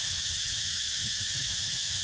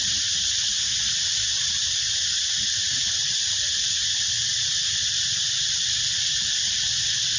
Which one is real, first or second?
second